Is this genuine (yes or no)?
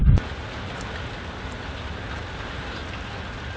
yes